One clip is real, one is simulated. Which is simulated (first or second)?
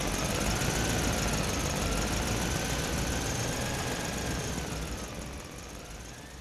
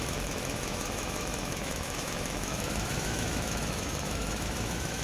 second